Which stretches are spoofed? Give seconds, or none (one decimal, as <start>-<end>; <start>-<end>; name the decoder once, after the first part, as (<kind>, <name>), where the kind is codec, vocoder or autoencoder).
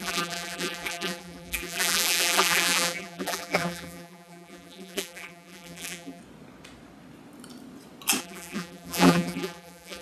0.0-6.2 (vocoder, BigVGAN v2); 8.2-10.0